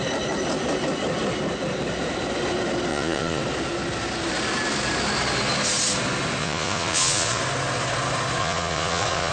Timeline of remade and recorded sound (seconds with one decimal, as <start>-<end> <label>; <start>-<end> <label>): 0.0-2.9 recorded; 2.9-3.4 remade; 3.4-6.4 recorded; 6.4-7.4 remade; 7.4-8.4 recorded; 8.4-9.3 remade